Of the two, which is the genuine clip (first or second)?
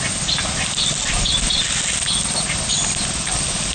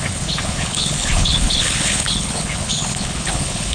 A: first